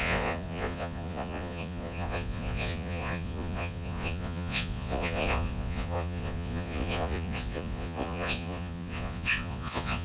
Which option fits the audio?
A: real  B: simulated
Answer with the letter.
B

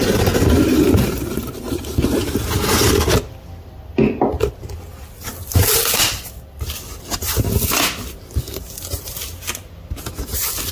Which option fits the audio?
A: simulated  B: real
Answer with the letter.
B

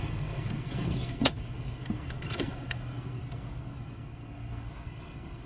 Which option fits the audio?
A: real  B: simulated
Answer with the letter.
B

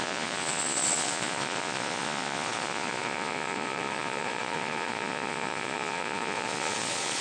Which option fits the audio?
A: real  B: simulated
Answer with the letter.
B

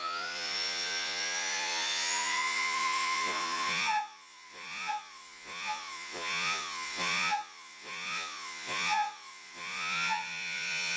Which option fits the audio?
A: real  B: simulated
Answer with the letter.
B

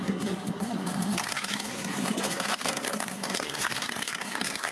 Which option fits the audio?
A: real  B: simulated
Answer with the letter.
B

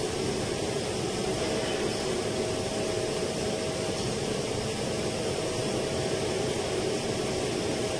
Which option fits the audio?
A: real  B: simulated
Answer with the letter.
A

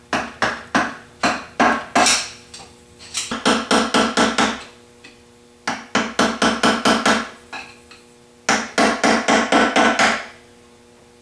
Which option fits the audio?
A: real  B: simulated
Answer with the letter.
A